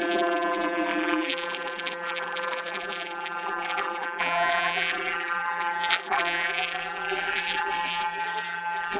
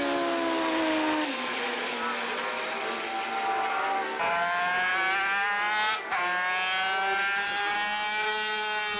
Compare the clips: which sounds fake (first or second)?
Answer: first